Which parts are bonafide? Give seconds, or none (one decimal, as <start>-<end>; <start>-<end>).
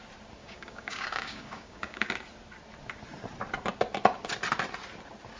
0.0-0.4; 2.1-5.4